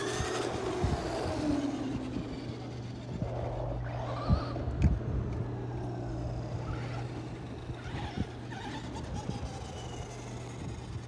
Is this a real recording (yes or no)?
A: yes